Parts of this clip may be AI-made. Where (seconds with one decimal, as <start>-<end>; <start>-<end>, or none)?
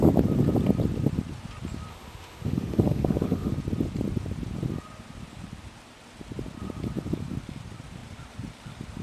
1.9-3.5